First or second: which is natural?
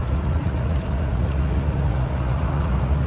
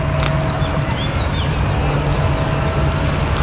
second